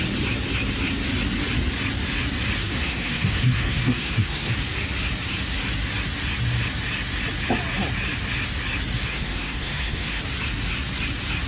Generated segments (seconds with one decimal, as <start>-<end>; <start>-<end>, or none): 2.6-4.5; 9.1-10.2